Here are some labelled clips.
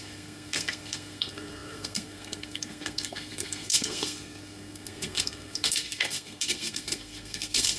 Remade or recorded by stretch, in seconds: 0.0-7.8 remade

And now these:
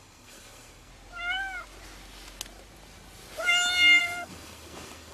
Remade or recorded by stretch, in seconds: 0.0-0.9 remade; 0.9-4.0 recorded; 4.0-5.1 remade

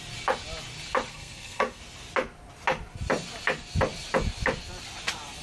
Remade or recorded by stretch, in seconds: 0.0-1.1 recorded; 1.1-1.8 remade; 1.8-5.4 recorded